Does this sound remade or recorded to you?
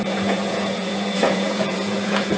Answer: remade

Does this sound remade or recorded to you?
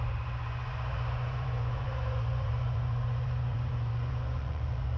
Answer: remade